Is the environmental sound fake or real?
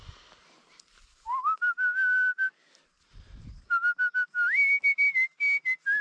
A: real